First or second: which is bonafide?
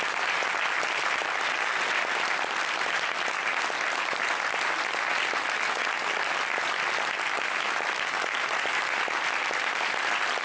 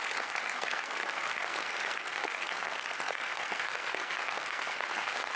first